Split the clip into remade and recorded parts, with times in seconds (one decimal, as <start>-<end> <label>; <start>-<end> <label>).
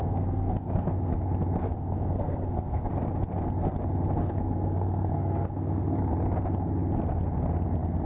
0.0-1.1 remade; 1.1-1.6 recorded; 1.6-2.9 remade; 2.9-4.2 recorded; 4.2-6.0 remade; 6.0-8.1 recorded